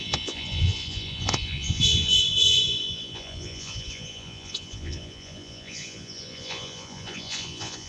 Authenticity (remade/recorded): remade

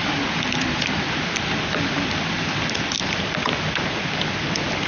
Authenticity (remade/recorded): recorded